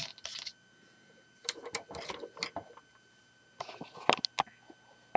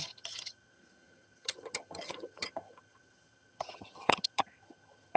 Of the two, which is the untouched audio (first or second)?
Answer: first